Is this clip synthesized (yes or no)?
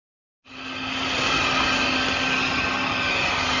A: no